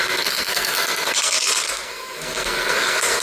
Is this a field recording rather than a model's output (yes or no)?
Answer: no